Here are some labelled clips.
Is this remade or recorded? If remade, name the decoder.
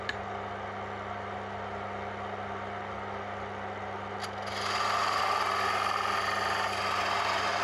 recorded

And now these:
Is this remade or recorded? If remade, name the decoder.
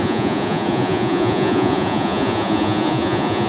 remade, vocoder, Vocos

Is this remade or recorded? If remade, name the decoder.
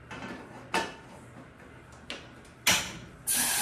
recorded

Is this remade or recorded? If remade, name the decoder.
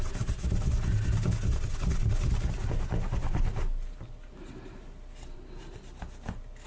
recorded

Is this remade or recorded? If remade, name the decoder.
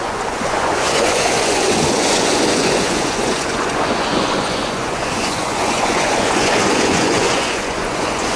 remade, vocoder, Vocos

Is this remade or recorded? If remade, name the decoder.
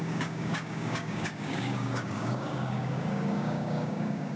remade, codec, DAC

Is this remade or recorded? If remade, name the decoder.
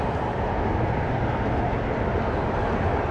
recorded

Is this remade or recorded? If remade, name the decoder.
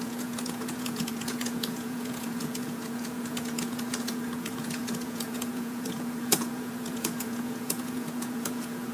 remade, vocoder, Vocos